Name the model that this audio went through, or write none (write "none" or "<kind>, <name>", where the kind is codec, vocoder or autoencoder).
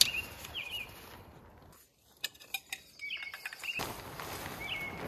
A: none